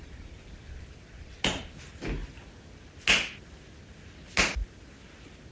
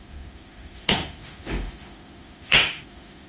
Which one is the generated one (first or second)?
second